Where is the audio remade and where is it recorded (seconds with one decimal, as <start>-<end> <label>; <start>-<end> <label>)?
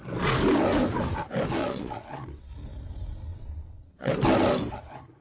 0.0-1.6 recorded; 1.6-2.5 remade; 2.5-3.3 recorded; 3.3-4.1 remade; 4.1-5.2 recorded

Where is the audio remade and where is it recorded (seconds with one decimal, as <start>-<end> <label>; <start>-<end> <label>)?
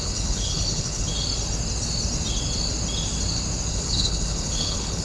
0.0-1.1 remade; 1.1-3.7 recorded; 3.7-5.0 remade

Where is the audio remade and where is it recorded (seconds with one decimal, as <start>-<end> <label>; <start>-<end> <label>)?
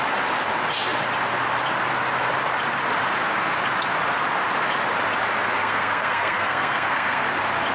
0.0-5.6 recorded; 5.6-7.2 remade; 7.2-7.7 recorded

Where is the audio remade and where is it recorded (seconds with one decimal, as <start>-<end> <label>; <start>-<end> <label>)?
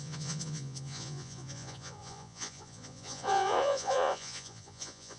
0.0-5.2 remade